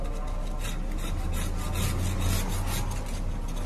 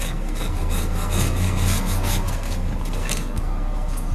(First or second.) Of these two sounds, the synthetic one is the second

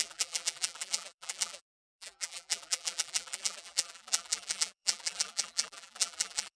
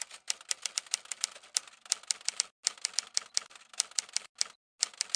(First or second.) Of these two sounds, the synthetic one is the first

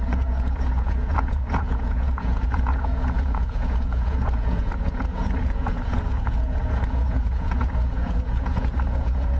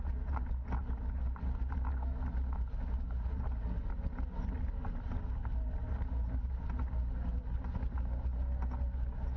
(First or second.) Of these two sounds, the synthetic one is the first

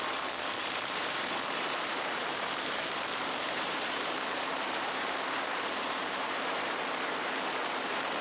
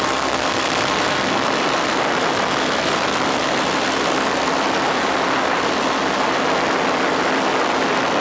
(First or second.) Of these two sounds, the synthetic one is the first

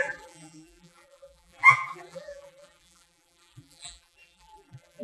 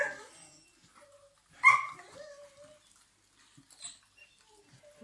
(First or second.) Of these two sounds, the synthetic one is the first